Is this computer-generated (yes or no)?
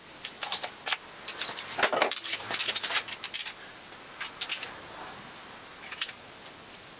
no